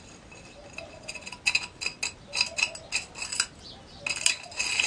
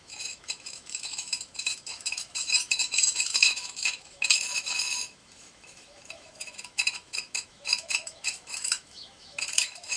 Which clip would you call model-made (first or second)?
second